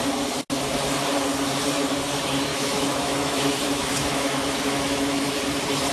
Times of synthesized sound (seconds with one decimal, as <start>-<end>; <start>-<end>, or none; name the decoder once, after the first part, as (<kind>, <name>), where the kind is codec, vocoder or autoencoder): 2.5-5.4 (autoencoder, DAC-VAE)